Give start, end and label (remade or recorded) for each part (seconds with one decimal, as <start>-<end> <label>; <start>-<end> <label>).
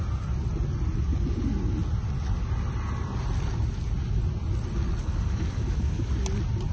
0.0-5.0 recorded; 5.0-6.1 remade; 6.1-6.7 recorded